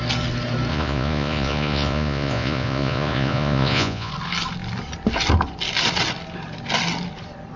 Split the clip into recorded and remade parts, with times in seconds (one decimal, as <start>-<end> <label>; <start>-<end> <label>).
0.0-0.7 recorded; 0.7-4.1 remade; 4.1-7.6 recorded